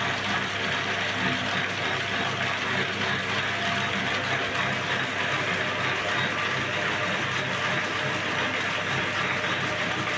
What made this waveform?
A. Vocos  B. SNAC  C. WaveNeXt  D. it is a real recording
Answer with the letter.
D